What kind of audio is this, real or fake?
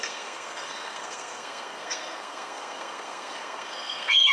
fake